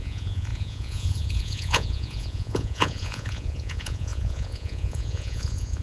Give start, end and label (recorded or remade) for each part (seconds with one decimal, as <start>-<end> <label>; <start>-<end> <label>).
0.0-5.8 remade